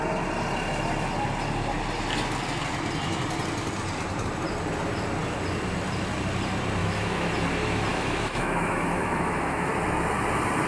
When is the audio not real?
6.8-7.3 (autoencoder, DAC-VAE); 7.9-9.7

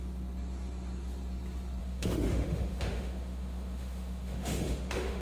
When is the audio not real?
1.8-5.2 (autoencoder, DAC-VAE)

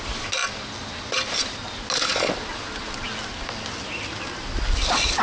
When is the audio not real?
none